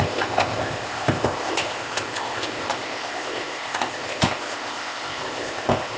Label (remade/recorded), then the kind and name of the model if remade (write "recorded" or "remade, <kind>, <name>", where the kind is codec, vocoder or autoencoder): remade, codec, ZipCodec